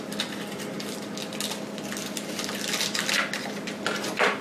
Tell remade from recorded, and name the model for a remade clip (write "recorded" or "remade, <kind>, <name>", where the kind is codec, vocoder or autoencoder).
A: remade, vocoder, BigVGAN v2